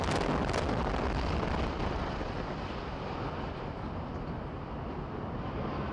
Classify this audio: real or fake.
real